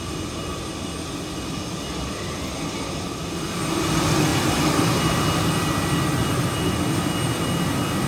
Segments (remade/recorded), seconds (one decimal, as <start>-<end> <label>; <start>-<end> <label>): 0.0-4.3 recorded; 4.3-4.9 remade; 4.9-8.1 recorded